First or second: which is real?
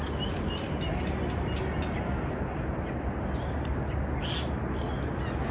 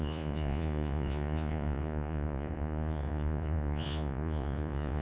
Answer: first